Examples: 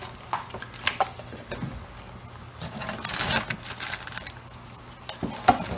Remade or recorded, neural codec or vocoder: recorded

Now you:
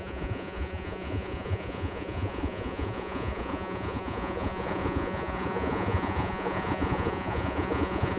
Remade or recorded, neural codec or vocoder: remade, vocoder, Vocos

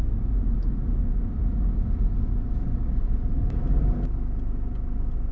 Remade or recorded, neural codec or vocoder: recorded